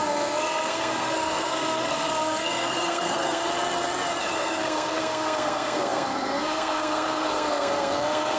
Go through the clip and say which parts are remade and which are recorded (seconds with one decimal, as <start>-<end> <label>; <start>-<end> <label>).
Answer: 0.0-3.4 remade; 3.4-4.2 recorded; 4.2-8.4 remade